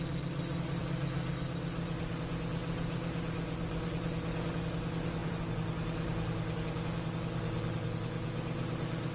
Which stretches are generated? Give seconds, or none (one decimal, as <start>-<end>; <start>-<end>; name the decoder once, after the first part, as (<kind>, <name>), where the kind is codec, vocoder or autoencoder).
0.8-2.0 (vocoder, BigVGAN v2); 2.6-3.8